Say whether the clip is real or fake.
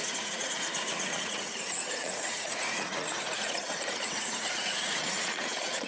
fake